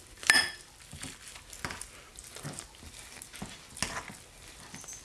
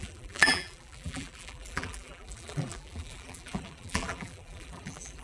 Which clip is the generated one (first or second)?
second